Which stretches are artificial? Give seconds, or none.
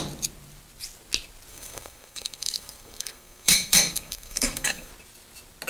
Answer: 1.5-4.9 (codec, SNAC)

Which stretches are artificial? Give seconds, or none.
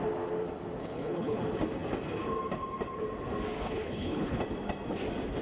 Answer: 0.8-1.4 (codec, HILCodec); 3.6-4.4